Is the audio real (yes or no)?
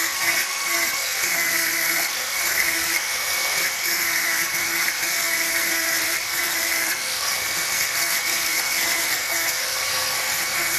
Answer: no